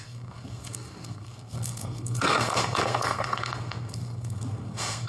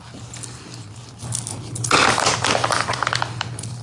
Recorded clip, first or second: second